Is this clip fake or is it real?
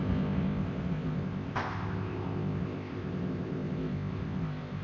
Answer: fake